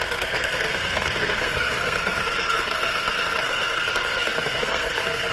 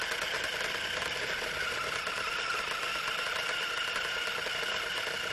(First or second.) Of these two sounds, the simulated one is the first